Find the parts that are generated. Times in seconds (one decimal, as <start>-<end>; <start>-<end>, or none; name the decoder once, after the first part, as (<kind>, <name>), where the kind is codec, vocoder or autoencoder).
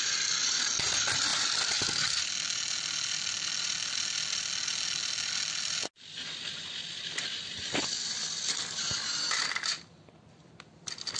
none